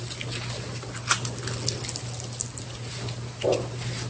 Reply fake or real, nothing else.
real